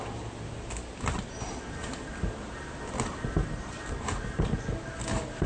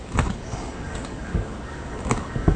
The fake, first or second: second